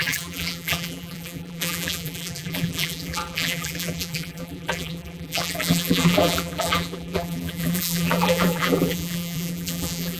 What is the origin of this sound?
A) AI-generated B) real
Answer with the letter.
A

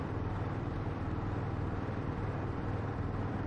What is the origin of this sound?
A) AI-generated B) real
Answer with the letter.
A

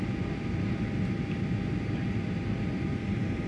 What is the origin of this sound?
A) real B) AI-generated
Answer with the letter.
A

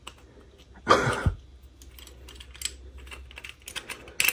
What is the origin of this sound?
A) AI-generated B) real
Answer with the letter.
B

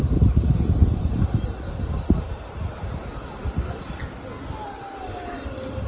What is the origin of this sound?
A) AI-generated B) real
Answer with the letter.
B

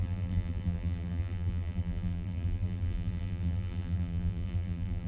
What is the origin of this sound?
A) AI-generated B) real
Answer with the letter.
A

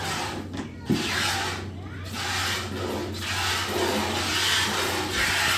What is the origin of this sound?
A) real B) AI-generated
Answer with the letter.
A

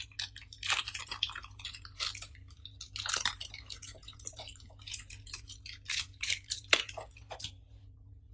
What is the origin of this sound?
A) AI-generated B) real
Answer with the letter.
A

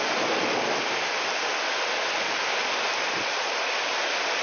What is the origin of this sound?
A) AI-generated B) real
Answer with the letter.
B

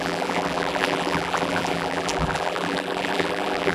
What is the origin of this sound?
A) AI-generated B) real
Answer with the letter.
A